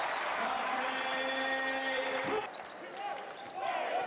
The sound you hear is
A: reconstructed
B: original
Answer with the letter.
B